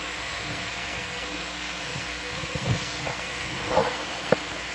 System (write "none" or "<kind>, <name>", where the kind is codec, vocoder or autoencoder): codec, SNAC